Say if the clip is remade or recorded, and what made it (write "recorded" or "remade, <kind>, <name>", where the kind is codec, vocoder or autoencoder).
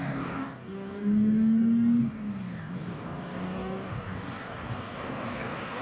remade, codec, DAC